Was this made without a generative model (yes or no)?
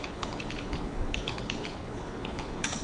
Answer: no